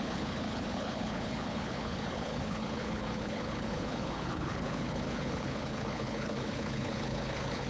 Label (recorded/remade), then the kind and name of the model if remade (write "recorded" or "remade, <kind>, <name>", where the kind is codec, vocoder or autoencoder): remade, codec, HILCodec